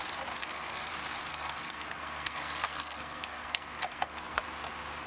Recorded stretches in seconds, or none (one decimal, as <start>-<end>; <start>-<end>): 0.0-0.4; 0.9-1.3; 4.4-5.1